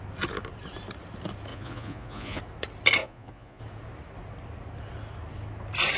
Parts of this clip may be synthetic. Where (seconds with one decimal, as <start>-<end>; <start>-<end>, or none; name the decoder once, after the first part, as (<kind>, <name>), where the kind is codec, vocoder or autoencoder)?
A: 1.5-2.4 (vocoder, Vocos); 3.0-3.6